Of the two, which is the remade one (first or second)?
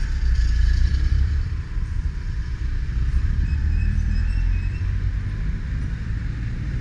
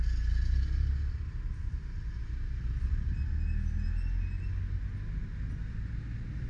first